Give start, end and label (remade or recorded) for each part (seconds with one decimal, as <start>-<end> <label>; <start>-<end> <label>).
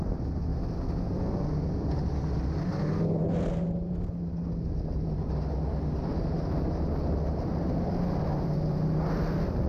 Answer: 0.0-0.5 remade; 0.5-2.7 recorded; 2.7-3.2 remade; 3.2-7.1 recorded; 7.1-9.7 remade